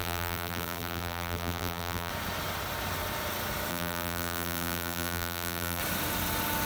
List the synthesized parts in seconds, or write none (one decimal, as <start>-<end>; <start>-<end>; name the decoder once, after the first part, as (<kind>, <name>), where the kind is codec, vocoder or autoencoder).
0.0-2.1 (vocoder, BigVGAN v2); 3.7-5.8